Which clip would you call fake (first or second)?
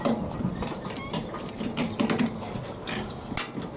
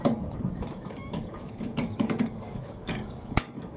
second